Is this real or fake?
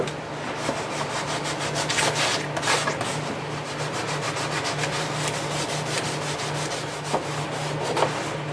real